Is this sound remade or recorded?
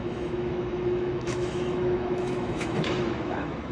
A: remade